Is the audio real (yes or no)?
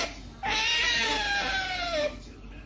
yes